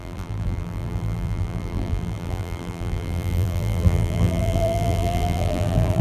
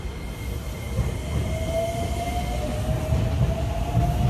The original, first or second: second